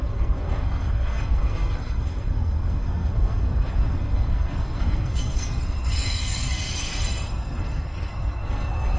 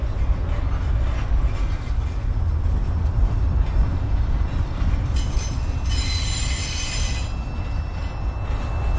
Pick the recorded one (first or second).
second